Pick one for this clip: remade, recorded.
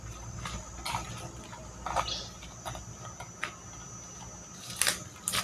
recorded